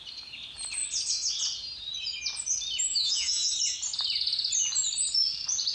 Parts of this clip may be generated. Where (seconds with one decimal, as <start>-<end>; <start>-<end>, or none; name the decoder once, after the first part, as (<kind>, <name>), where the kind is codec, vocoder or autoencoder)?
2.9-3.5 (vocoder, Vocos)